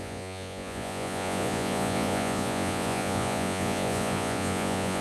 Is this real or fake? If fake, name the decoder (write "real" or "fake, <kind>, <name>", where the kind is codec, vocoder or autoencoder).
fake, vocoder, Vocos